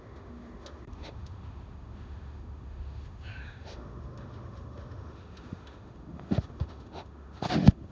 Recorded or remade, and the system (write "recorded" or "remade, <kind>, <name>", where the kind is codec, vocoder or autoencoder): remade, autoencoder, DAC-VAE